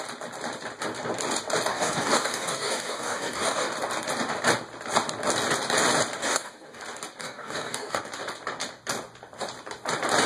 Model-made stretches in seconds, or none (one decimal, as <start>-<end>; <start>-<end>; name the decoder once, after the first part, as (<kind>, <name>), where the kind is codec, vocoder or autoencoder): 1.7-3.7 (codec, DAC); 6.2-6.8; 7.2-8.0